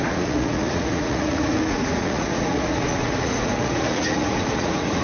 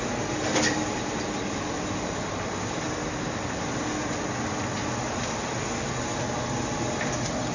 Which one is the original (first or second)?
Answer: second